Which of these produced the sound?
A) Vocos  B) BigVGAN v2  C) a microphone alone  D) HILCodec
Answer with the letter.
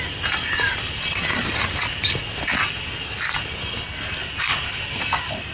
C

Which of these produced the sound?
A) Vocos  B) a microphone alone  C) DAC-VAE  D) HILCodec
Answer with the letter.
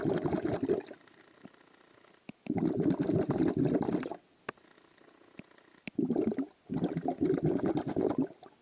B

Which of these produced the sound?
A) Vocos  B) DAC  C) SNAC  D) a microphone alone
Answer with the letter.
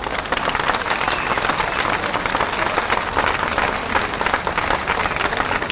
D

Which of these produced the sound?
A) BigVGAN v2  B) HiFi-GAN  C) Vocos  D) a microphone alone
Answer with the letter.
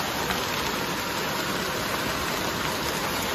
D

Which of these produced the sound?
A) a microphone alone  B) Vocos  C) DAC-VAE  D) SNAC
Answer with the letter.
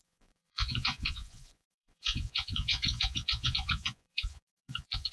B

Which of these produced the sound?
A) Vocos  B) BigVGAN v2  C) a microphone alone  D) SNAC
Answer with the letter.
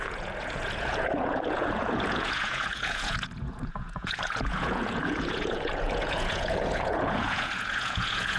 A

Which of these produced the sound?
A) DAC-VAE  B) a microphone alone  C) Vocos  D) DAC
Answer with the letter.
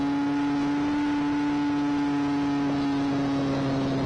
B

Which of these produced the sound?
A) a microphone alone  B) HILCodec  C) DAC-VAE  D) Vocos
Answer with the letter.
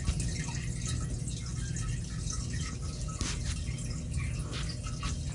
A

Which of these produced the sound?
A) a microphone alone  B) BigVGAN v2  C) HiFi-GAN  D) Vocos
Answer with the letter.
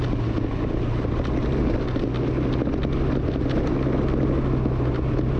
A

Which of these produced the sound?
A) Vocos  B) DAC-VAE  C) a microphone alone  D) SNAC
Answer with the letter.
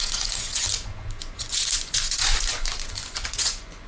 A